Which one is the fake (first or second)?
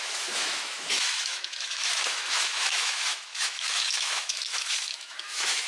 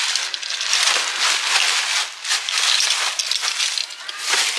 first